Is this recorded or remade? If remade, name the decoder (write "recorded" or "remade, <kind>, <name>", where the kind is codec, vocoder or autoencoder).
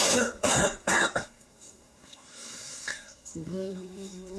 remade, codec, SNAC